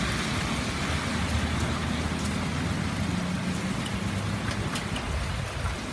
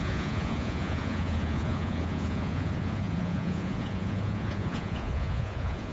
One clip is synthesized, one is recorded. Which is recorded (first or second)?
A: first